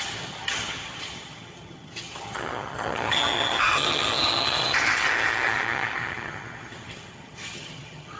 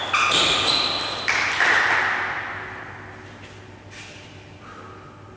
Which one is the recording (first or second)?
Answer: second